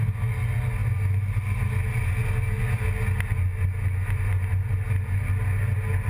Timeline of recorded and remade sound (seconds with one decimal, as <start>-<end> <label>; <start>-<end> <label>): 0.0-6.1 recorded